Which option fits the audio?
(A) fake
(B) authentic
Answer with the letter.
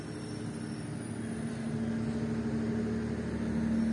B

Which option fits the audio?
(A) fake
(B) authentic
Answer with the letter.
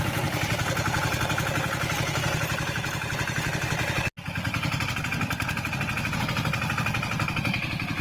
B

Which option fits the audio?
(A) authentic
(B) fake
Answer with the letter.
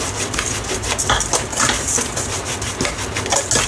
A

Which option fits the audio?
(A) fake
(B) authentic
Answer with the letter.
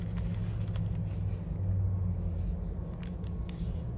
B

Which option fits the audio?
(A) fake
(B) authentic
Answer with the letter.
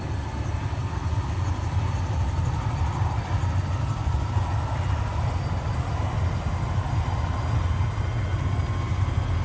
B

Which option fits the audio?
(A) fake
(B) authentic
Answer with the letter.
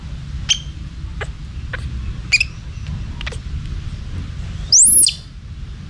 B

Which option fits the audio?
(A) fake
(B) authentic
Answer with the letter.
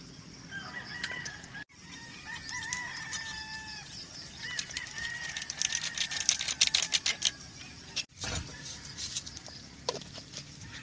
B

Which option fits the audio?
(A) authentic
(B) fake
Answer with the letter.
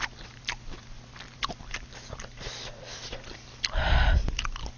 B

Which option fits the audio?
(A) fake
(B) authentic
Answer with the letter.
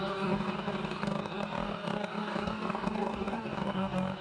A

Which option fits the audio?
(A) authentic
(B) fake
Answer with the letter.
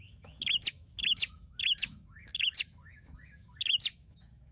B